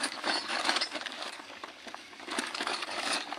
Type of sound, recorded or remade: remade